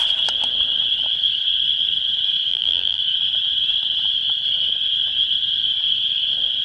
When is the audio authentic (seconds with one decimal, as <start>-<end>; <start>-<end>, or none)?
0.0-2.5; 3.0-6.6